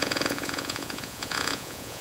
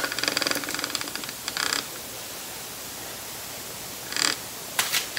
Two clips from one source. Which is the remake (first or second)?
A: first